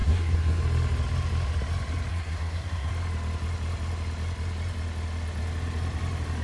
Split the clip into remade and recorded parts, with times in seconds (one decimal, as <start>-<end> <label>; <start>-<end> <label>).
0.0-0.6 remade; 0.6-2.1 recorded; 2.1-2.9 remade; 2.9-6.4 recorded